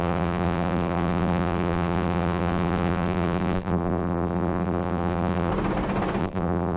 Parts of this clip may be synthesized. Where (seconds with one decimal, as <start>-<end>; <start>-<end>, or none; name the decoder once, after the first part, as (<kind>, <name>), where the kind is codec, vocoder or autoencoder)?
0.0-5.5 (vocoder, BigVGAN v2); 6.2-6.8